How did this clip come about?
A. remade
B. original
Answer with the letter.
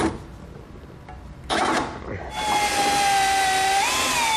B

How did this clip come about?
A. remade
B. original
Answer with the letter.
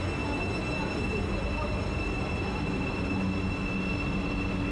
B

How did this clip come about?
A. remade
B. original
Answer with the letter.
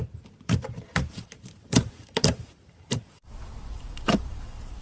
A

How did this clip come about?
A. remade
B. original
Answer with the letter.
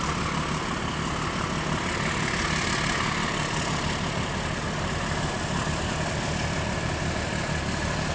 B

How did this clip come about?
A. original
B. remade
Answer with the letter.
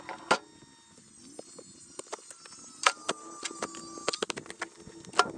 A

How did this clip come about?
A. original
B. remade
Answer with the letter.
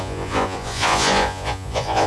B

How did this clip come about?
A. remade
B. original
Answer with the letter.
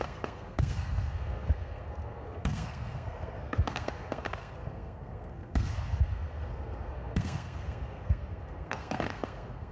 A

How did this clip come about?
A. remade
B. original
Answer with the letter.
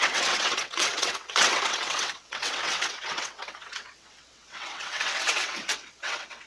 A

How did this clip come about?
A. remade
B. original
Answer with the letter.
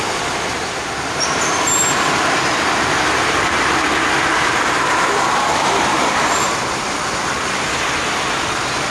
A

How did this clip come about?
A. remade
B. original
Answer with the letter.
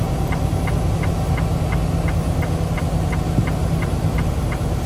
B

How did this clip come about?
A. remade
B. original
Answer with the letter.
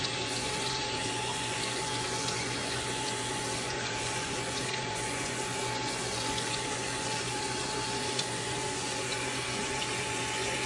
A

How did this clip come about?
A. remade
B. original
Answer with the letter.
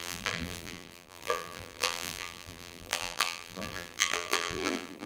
A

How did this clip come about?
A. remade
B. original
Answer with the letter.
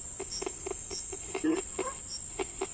B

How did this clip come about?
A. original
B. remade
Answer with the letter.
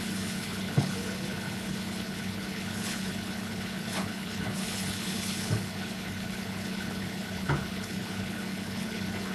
B